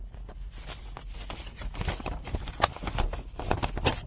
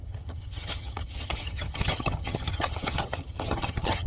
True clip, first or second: first